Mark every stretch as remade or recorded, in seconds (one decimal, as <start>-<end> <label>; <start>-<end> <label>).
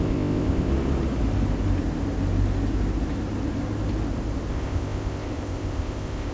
0.0-0.7 remade; 0.7-4.5 recorded; 4.5-6.3 remade